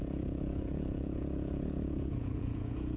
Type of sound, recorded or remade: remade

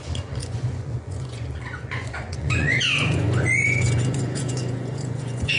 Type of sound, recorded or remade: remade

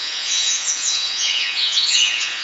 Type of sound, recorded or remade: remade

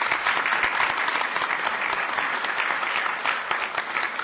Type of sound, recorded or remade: recorded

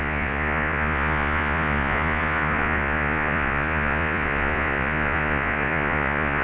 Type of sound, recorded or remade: remade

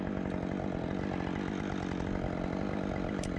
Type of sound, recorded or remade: recorded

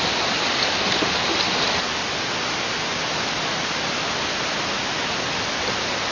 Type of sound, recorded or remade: recorded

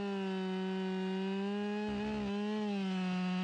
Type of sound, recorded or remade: recorded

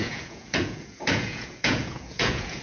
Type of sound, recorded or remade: remade